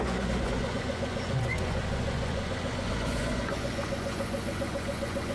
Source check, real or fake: fake